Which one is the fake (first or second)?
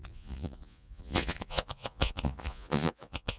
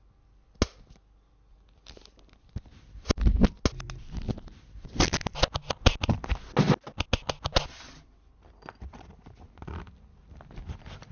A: first